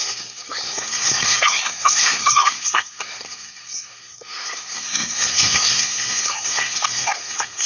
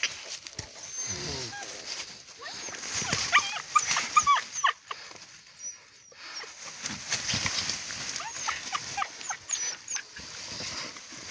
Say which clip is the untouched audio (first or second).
second